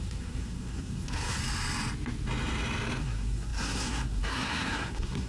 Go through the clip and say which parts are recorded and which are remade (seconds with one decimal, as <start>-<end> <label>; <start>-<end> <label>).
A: 0.0-1.4 remade; 1.4-3.0 recorded; 3.0-5.3 remade